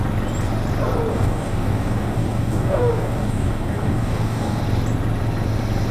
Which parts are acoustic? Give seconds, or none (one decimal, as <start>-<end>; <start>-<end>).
0.0-1.1; 4.6-5.9